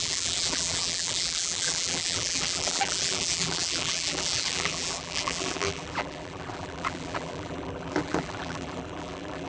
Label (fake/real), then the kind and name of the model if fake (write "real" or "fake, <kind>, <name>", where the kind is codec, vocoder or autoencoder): fake, vocoder, BigVGAN v2